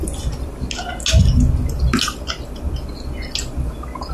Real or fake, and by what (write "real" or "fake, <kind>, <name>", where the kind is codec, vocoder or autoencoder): real